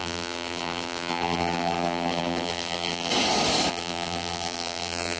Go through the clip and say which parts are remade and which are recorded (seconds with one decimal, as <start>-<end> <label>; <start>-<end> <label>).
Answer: 0.0-3.1 remade; 3.1-3.7 recorded; 3.7-5.2 remade